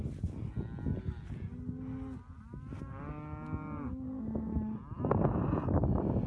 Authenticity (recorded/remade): recorded